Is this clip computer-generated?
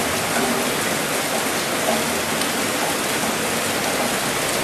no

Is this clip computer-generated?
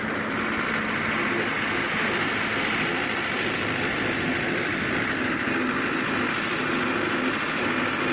no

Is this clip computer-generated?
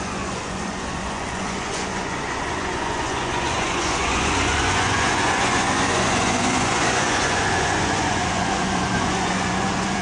yes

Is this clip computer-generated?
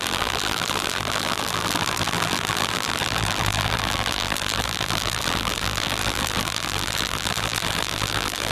yes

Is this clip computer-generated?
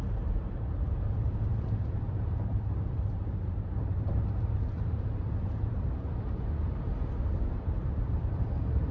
yes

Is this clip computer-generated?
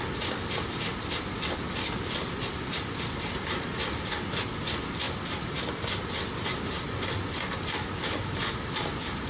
no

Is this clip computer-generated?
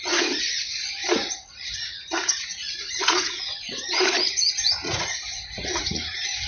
yes